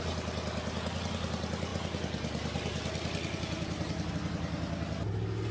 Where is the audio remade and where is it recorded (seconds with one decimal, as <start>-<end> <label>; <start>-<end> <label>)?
0.0-5.5 recorded